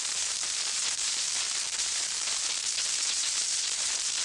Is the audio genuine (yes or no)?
no